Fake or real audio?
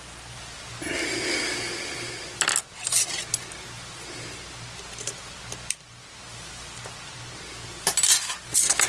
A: real